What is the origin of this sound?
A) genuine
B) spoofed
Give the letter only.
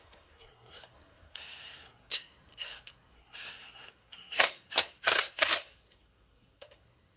B